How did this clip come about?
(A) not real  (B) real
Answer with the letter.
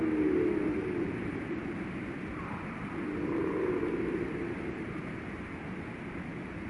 B